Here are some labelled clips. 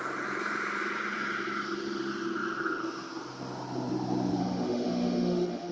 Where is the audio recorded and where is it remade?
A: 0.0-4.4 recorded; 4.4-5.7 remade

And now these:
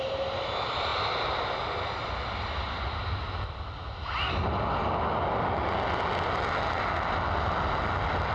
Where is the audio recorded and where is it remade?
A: 0.0-8.3 recorded

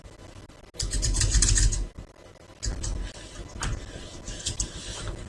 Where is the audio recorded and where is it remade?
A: 0.0-5.3 recorded